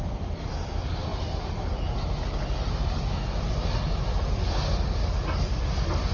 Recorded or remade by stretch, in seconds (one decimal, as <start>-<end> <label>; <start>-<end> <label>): 0.0-5.0 recorded; 5.0-5.6 remade; 5.6-6.1 recorded